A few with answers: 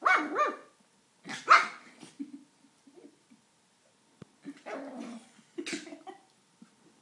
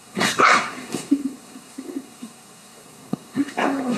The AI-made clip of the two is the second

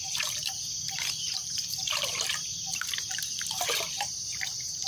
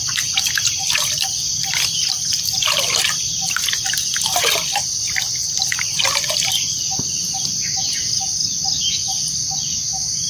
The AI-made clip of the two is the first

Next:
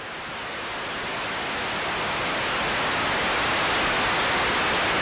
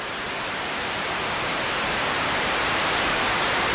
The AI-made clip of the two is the second